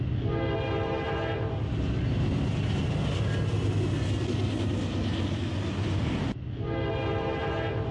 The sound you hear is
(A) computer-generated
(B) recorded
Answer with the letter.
B